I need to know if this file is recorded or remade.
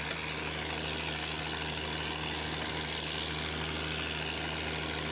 recorded